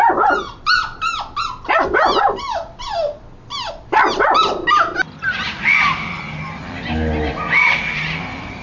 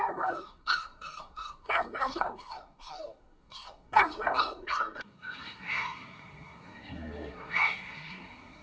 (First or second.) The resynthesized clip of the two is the second